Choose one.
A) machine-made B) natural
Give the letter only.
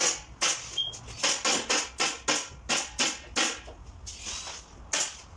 B